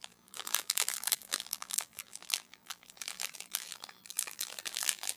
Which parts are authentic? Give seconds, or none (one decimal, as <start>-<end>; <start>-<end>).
none